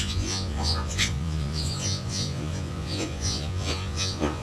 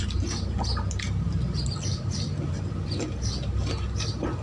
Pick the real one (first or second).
second